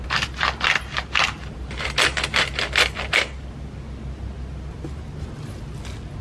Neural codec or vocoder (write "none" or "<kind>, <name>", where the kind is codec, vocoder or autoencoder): none